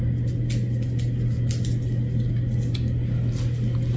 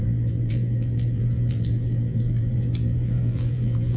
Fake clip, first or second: second